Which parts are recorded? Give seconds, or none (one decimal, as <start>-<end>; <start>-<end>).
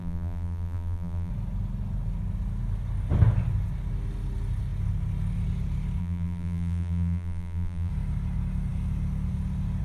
1.3-6.0; 7.9-9.8